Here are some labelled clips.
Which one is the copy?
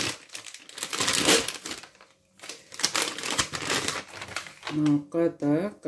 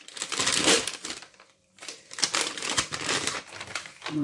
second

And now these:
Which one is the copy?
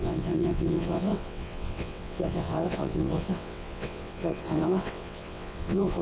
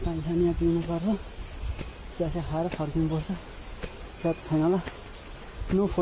first